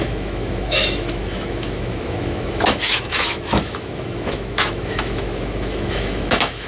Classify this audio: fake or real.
fake